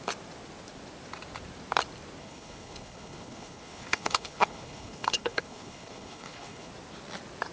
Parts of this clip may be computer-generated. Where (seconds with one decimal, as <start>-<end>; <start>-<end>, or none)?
2.2-6.7

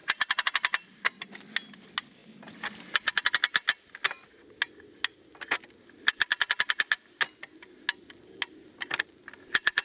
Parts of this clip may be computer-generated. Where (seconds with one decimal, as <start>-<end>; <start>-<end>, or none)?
none